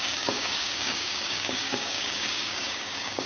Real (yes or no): no